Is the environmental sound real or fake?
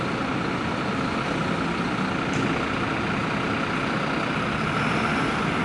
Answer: real